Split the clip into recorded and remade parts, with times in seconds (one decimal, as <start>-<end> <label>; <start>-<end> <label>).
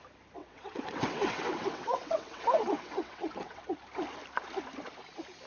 0.0-0.4 recorded; 0.4-3.7 remade; 3.7-5.5 recorded